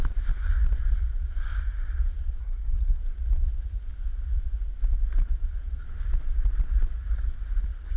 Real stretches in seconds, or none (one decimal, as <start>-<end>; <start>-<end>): 0.0-2.4; 3.0-8.0